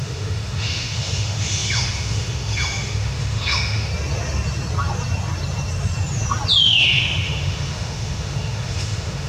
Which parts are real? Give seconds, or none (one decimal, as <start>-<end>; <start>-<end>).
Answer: 3.9-6.6